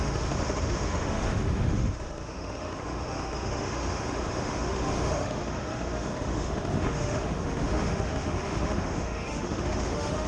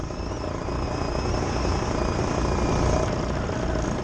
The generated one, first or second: first